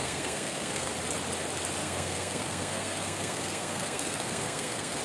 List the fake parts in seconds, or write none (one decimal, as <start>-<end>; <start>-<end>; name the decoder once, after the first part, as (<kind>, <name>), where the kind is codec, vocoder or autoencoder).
0.0-0.9 (codec, SNAC); 1.8-5.0